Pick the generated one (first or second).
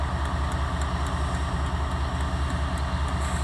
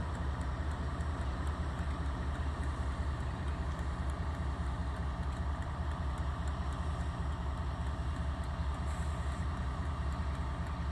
second